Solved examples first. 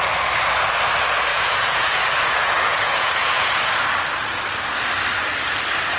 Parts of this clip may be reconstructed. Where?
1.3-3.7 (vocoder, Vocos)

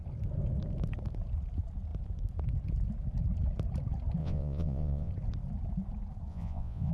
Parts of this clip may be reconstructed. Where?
4.2-5.1 (vocoder, Vocos); 6.3-6.9

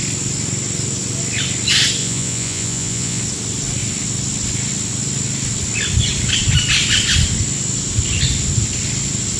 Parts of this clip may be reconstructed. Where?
2.0-3.2 (vocoder, Vocos)

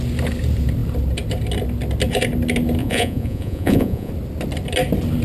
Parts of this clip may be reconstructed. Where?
2.8-4.1 (vocoder, Vocos)

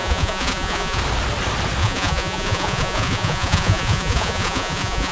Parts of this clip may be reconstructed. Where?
0.0-1.0 (vocoder, Vocos); 1.8-5.1

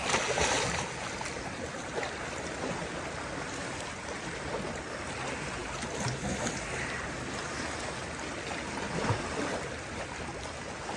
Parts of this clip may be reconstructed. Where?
none

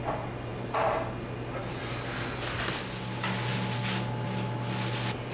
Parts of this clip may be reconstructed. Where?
none